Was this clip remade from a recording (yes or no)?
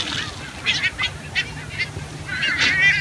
no